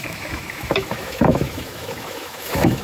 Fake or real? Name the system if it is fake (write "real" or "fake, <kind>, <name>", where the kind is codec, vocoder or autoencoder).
fake, autoencoder, DAC-VAE